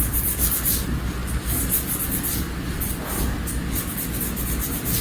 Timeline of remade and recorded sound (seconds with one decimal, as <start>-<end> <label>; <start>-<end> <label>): 0.0-5.0 recorded